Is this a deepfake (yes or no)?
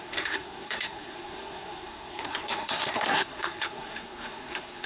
yes